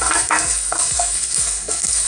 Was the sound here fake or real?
fake